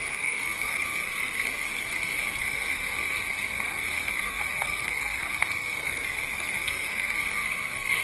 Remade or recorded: remade